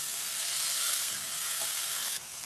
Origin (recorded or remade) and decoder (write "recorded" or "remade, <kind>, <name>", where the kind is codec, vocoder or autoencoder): remade, codec, SNAC